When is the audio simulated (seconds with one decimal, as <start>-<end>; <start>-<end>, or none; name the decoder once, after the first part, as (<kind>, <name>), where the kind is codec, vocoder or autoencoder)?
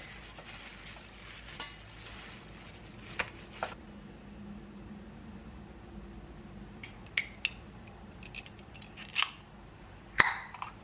none